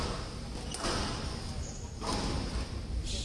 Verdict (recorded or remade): recorded